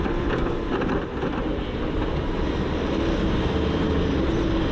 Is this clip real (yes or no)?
yes